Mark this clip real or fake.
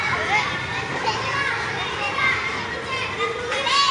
real